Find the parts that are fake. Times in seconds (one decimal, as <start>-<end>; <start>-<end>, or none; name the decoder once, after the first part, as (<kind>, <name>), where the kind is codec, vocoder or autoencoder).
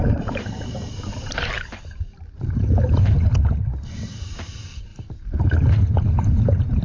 0.0-3.2 (vocoder, BigVGAN v2); 4.0-4.9; 5.7-6.8